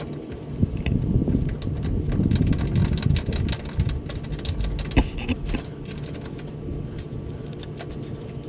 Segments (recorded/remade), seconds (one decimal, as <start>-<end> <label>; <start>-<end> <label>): 0.0-8.5 recorded